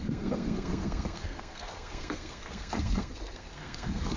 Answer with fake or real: fake